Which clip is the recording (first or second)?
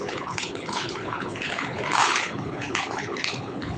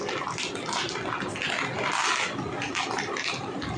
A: second